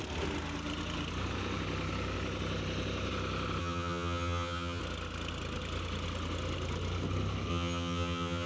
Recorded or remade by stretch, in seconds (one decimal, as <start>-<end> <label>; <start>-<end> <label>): 0.0-3.6 recorded; 3.6-4.8 remade; 4.8-7.5 recorded; 7.5-8.5 remade